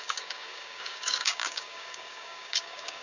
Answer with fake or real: fake